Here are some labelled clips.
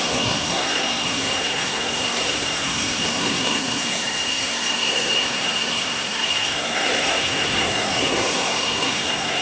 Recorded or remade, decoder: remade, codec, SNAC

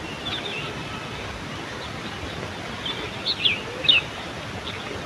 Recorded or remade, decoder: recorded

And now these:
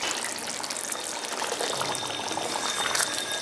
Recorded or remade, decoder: recorded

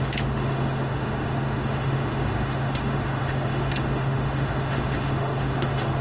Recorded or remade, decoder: remade, autoencoder, DAC-VAE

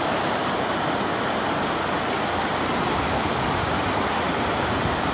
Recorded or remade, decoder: recorded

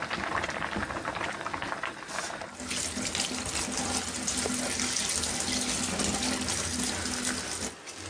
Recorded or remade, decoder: recorded